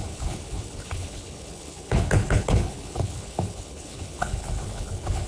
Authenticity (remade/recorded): remade